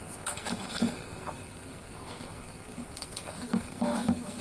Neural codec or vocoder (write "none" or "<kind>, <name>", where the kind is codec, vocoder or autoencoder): codec, SNAC